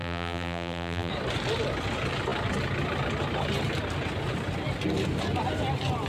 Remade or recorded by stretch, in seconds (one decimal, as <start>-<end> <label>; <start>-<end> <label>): 0.0-1.1 remade; 1.1-6.1 recorded